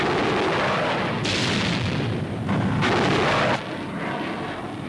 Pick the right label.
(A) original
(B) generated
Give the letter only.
A